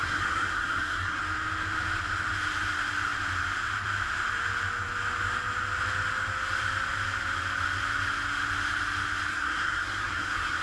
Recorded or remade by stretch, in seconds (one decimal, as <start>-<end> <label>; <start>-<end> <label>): 0.0-1.2 remade; 1.2-9.3 recorded; 9.3-10.6 remade